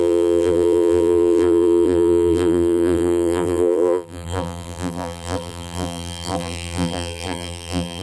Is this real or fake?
fake